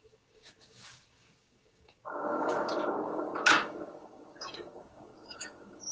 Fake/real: fake